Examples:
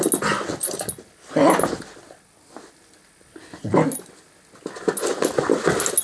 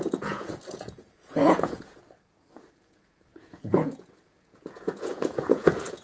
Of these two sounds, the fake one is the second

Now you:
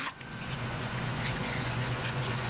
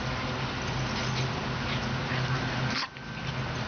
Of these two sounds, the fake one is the first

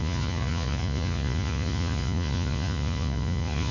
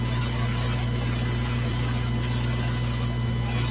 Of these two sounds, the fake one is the first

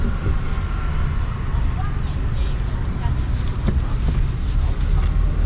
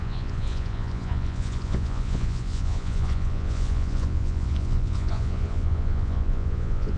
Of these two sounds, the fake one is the second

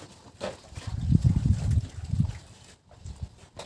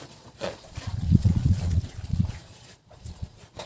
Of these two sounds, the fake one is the second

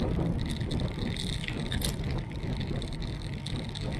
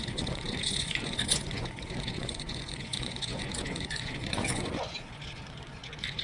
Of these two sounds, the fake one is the second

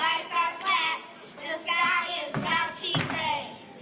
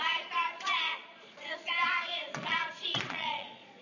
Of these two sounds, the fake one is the second